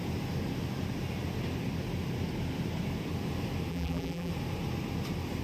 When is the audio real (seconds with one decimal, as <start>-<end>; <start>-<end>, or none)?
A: 0.0-3.7; 4.3-5.4